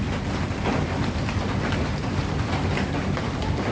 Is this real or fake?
real